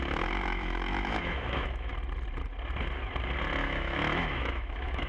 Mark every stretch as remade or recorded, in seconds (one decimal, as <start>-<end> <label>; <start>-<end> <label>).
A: 0.0-1.9 remade; 1.9-3.6 recorded; 3.6-5.1 remade